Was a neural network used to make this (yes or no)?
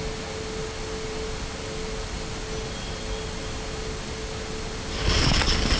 no